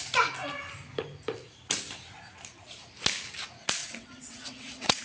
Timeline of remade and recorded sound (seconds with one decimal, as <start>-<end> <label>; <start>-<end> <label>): 0.0-3.8 recorded; 3.8-5.0 remade